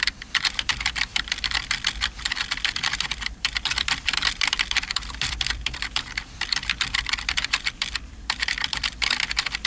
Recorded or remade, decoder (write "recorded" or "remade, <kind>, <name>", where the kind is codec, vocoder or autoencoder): remade, vocoder, BigVGAN v2